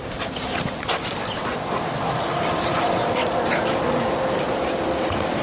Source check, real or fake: real